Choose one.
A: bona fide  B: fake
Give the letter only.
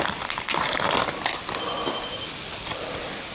A